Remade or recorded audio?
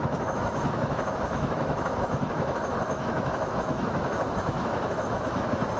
remade